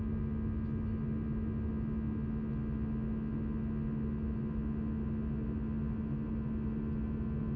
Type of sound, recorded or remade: recorded